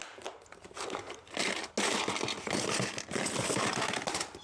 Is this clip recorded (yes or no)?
yes